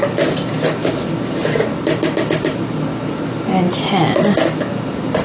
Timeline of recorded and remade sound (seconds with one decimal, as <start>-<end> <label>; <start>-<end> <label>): 0.0-5.2 recorded